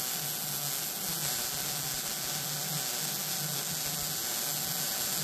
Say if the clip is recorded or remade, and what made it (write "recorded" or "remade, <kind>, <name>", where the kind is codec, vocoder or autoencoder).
recorded